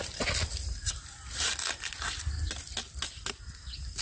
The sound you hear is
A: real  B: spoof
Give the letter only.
A